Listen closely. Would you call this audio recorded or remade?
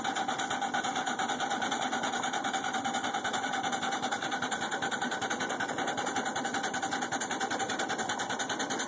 recorded